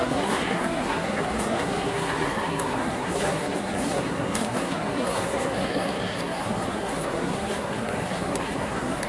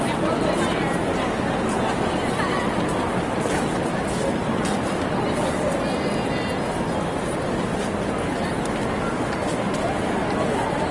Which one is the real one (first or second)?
second